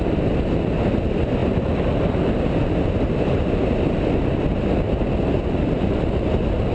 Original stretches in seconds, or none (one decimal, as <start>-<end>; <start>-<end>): 0.0-6.7

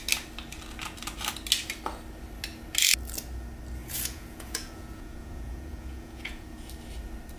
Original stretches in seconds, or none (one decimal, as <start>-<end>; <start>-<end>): 0.0-3.8; 6.7-7.4

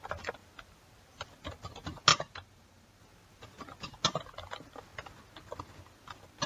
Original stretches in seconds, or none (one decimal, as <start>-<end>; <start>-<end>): 0.0-2.1; 3.0-6.5

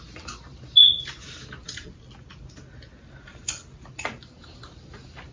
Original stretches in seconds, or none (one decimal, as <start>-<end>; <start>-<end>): 0.0-5.3